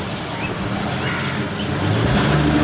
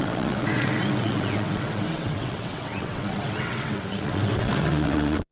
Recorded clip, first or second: first